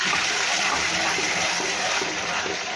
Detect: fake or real real